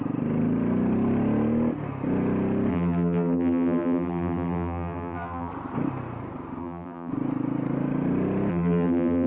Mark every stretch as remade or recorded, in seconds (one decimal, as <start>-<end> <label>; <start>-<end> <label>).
0.0-2.7 recorded; 2.7-5.5 remade; 5.5-6.6 recorded; 6.6-7.1 remade; 7.1-8.5 recorded; 8.5-9.3 remade